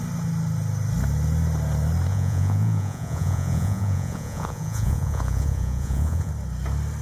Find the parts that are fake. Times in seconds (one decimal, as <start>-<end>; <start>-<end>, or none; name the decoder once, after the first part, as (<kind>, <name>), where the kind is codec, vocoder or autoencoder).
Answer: 2.1-6.3 (vocoder, Vocos)